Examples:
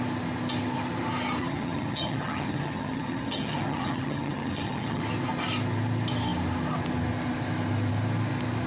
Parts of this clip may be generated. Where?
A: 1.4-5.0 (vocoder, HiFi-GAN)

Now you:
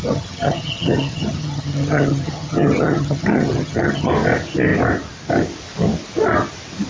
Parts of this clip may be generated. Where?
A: 0.0-4.1 (vocoder, HiFi-GAN)

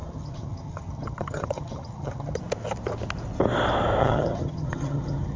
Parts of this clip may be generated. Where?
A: 0.0-2.4 (vocoder, HiFi-GAN); 4.0-5.4

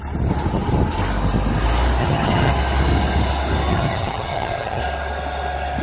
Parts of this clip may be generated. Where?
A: 2.0-2.5 (vocoder, HiFi-GAN); 3.7-4.8

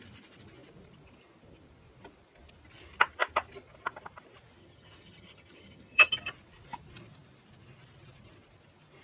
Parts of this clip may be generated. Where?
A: 4.6-6.1 (vocoder, HiFi-GAN)

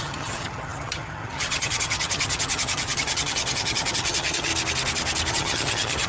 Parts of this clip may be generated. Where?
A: 0.0-4.5 (vocoder, HiFi-GAN); 5.3-6.1

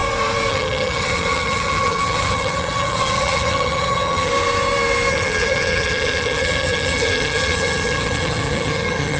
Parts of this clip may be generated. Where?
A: 0.5-4.3 (vocoder, HiFi-GAN); 5.1-9.2

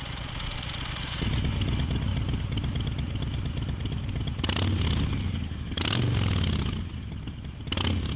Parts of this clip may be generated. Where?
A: none